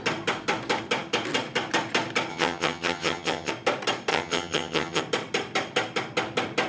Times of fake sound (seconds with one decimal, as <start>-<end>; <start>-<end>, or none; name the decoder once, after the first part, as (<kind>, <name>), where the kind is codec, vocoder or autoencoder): 2.3-3.5 (vocoder, HiFi-GAN); 4.1-5.0